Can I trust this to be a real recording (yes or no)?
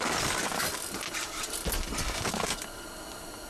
yes